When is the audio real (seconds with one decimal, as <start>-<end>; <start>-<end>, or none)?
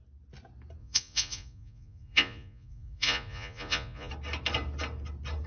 0.0-0.8; 4.1-5.5